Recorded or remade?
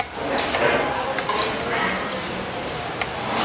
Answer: recorded